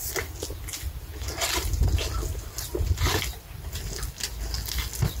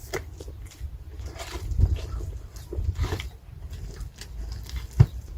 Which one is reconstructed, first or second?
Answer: second